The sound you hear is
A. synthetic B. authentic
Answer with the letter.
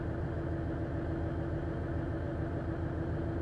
B